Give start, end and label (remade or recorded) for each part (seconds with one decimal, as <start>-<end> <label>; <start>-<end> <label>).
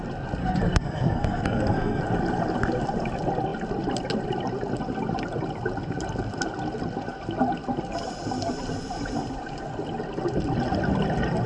0.0-0.4 recorded; 0.4-2.0 remade; 2.0-11.5 recorded